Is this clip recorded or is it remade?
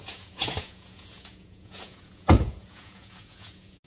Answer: remade